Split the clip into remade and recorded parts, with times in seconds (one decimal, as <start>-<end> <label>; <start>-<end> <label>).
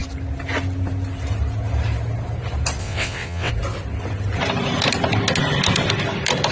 0.0-2.8 recorded; 2.8-3.5 remade; 3.5-6.5 recorded